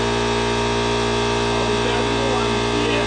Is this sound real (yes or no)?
yes